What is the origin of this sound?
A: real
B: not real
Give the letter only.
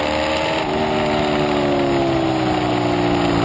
A